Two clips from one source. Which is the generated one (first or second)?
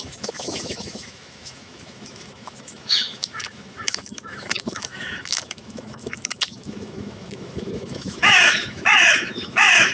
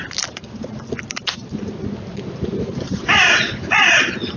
first